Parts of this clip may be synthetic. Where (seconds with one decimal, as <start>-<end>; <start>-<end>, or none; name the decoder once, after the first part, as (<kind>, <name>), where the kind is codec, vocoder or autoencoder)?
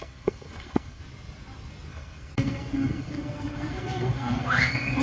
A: 0.0-1.0 (codec, SNAC); 1.9-5.0